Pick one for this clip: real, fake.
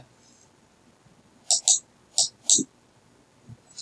real